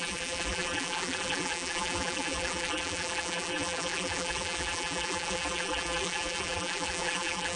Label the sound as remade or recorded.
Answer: remade